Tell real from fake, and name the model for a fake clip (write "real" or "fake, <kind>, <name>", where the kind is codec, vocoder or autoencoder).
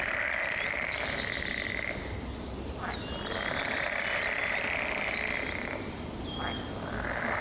real